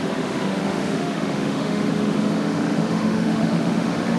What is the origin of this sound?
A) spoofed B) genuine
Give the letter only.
A